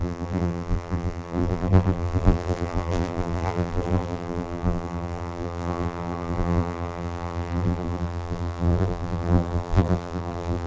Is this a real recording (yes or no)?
no